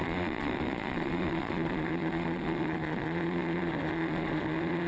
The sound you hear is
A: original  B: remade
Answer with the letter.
B